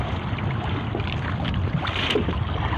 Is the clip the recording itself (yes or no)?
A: yes